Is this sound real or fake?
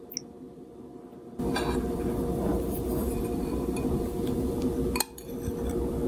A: real